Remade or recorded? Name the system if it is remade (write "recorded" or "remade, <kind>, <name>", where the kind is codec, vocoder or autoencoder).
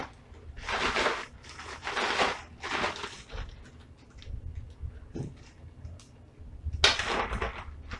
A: recorded